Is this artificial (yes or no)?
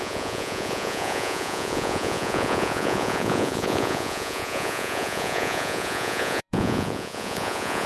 yes